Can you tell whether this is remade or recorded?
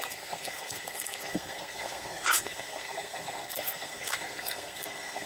remade